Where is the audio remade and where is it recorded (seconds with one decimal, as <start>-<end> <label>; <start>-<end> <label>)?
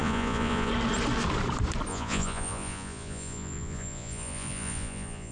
0.0-0.7 remade; 0.7-1.9 recorded; 1.9-5.3 remade